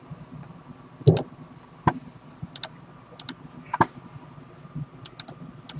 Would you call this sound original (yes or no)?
yes